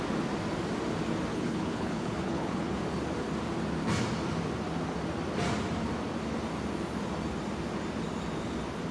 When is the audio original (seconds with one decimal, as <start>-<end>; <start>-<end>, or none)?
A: 0.0-1.3; 2.8-8.9